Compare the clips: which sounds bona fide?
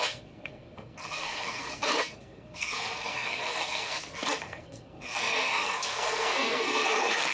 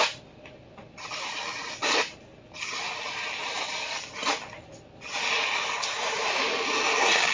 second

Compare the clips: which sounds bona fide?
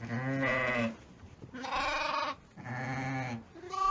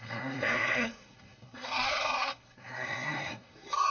first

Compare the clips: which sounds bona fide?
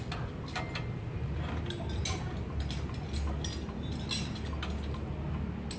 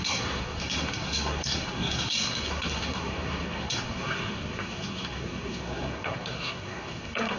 first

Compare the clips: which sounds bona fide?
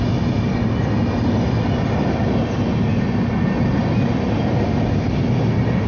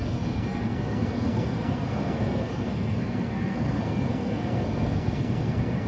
first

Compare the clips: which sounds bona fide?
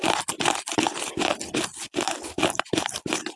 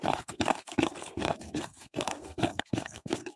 first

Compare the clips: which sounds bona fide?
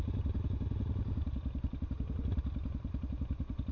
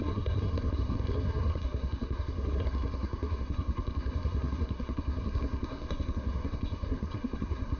first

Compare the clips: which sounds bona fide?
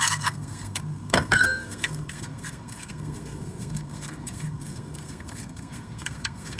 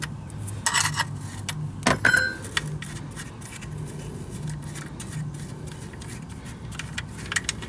second